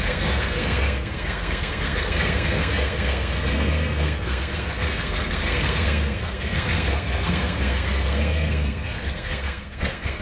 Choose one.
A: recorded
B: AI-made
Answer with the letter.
B